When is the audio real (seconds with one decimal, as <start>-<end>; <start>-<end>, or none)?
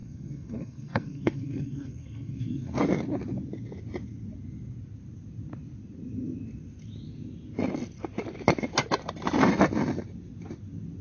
2.8-11.0